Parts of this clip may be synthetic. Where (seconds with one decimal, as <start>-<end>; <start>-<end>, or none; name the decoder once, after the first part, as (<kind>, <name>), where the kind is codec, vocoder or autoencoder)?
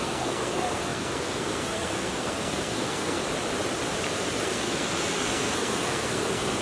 0.0-3.2 (codec, SNAC); 4.4-6.6